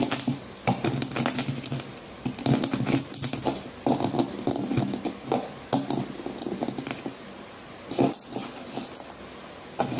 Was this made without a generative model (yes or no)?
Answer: yes